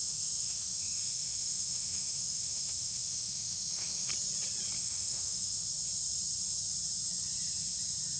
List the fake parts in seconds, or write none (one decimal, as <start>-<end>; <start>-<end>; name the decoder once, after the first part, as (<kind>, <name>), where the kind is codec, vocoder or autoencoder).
0.0-4.1 (autoencoder, DAC-VAE); 4.8-5.7